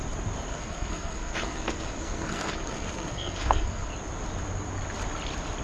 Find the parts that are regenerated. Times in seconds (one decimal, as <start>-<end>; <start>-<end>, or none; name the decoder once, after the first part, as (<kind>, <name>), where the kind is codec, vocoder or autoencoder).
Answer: 0.5-3.9 (codec, SNAC)

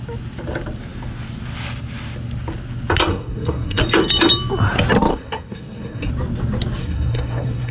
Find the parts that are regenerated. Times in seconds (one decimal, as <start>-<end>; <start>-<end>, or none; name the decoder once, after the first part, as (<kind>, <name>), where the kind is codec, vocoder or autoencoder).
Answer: 3.1-3.8 (codec, SNAC); 5.1-6.1; 6.8-7.7